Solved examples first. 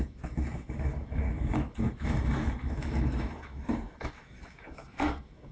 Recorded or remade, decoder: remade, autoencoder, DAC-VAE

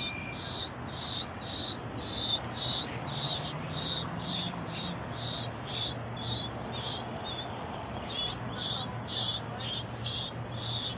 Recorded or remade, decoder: recorded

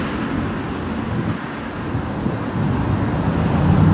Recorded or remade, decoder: recorded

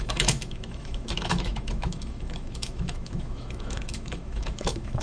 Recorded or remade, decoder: remade, autoencoder, DAC-VAE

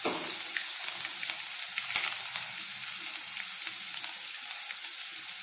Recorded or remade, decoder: recorded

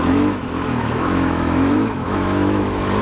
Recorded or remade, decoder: remade, autoencoder, DAC-VAE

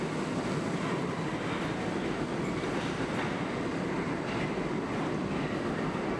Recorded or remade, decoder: recorded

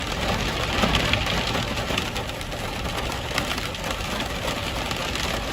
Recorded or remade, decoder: recorded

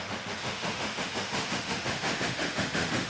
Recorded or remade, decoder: remade, autoencoder, DAC-VAE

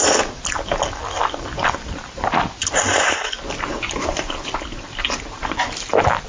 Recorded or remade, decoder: recorded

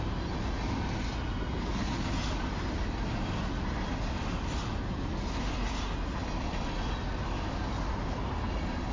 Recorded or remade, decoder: recorded